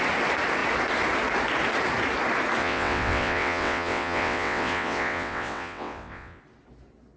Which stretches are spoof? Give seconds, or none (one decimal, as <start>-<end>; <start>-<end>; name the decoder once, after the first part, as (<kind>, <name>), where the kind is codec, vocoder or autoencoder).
2.6-6.4 (vocoder, WaveNeXt)